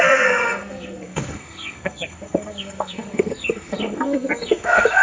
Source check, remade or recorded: remade